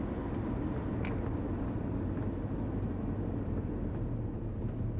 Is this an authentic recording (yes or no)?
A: yes